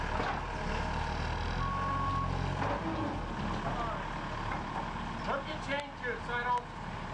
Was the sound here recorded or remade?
recorded